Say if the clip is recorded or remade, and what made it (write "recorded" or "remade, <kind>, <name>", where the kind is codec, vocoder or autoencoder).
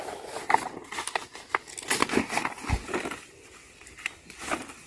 recorded